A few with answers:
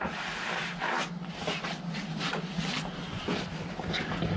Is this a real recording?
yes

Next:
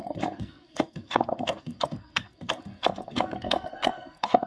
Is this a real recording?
no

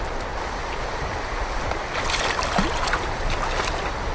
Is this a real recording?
yes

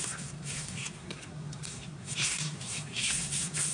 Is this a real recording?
no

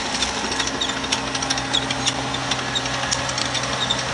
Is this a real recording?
yes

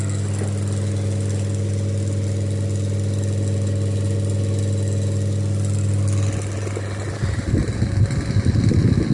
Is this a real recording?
yes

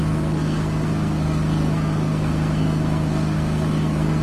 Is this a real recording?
no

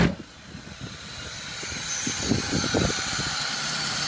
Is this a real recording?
yes